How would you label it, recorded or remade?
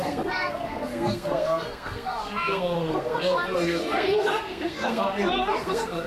remade